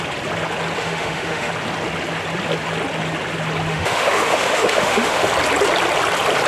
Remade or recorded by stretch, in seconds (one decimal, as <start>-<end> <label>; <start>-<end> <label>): 0.0-0.8 recorded; 0.8-1.5 remade; 1.5-3.7 recorded; 3.7-5.3 remade; 5.3-6.5 recorded

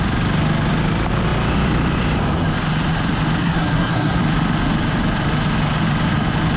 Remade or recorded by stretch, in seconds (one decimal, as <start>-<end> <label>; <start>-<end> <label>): 0.0-3.4 recorded; 3.4-4.2 remade; 4.2-6.6 recorded

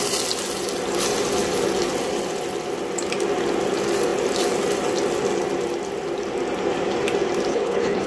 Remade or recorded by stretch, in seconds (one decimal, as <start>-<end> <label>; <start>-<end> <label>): 0.0-7.5 recorded; 7.5-8.1 remade

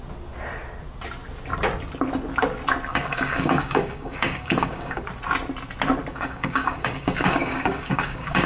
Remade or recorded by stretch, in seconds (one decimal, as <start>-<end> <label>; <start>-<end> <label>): 0.0-2.9 recorded; 2.9-5.0 remade; 5.0-6.1 recorded; 6.1-8.5 remade

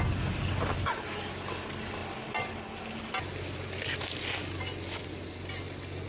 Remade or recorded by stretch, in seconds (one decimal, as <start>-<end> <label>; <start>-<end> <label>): 0.0-6.1 recorded

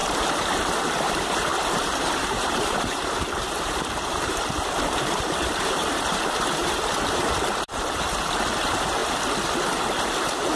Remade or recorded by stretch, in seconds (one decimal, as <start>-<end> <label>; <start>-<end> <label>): 0.0-9.0 remade; 9.0-9.9 recorded; 9.9-10.6 remade

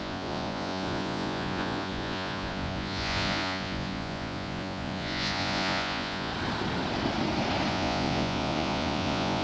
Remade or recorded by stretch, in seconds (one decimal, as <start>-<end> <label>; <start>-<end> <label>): 0.0-6.3 remade; 6.3-7.7 recorded; 7.7-9.4 remade

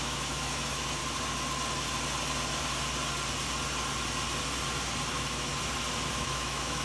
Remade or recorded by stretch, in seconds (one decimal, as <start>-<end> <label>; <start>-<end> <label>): 0.0-1.0 remade; 1.0-5.1 recorded; 5.1-5.5 remade; 5.5-6.1 recorded; 6.1-6.8 remade